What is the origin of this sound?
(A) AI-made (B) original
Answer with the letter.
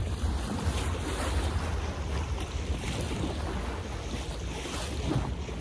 B